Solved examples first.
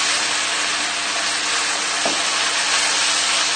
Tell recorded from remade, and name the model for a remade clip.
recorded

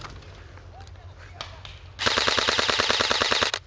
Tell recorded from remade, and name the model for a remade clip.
recorded